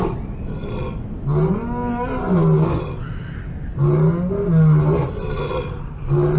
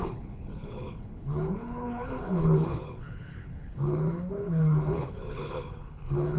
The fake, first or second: second